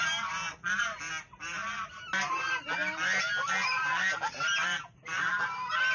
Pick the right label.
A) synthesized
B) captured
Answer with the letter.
B